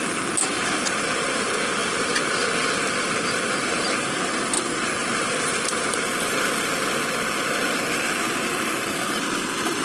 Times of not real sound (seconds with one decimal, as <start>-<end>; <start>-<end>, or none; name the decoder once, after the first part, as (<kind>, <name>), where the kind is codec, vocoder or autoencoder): 5.0-6.3 (vocoder, BigVGAN v2)